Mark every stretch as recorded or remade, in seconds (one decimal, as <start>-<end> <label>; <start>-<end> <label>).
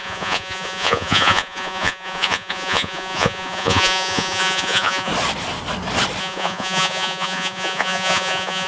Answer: 0.0-5.1 remade; 5.1-6.2 recorded; 6.2-8.7 remade